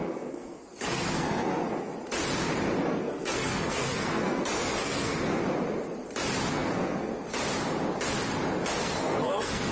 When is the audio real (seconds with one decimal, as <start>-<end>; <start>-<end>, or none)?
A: 1.9-3.0; 5.4-6.5; 7.1-8.8